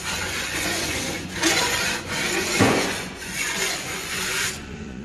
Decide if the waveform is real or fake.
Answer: fake